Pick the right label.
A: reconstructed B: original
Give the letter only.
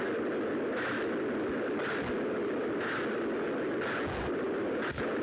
B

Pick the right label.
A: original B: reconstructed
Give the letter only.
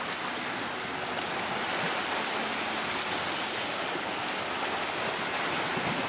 A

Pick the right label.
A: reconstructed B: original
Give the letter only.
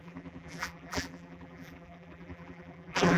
A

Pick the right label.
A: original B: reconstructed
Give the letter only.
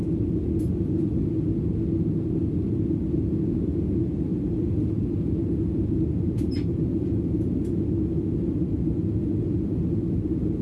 A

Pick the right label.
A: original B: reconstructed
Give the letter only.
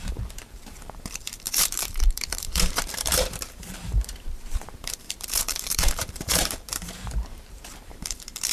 B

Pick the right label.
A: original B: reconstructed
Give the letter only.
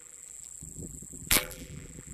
B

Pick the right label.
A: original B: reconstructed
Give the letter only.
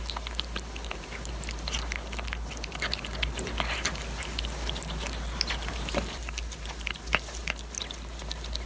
A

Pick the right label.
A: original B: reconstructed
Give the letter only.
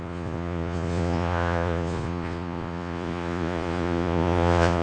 B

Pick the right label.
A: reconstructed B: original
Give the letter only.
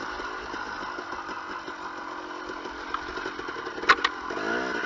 B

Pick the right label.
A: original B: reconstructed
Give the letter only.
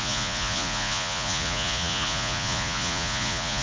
B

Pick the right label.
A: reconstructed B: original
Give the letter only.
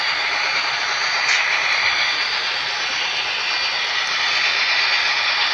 B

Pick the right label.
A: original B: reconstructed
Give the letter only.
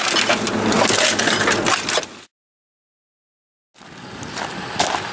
A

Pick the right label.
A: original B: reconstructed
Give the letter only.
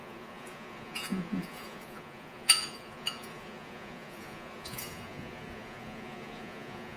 B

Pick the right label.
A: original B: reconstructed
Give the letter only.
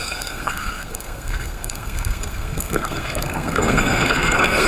B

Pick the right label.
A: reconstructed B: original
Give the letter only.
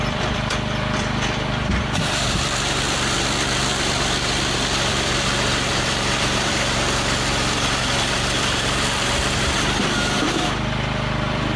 A